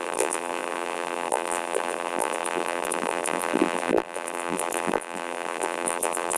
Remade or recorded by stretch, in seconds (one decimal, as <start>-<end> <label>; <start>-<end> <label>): 0.0-6.4 remade